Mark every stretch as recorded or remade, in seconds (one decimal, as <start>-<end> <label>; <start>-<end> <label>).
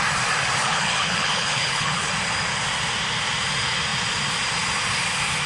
0.0-0.6 recorded; 0.6-2.1 remade; 2.1-5.5 recorded